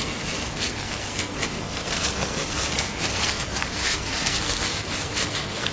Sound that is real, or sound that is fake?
fake